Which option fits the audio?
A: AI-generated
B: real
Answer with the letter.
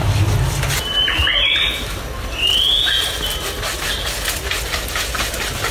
B